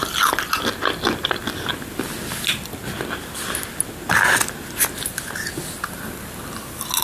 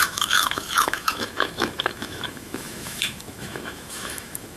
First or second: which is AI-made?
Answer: second